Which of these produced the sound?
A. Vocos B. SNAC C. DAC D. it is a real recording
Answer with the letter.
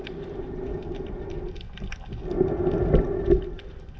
D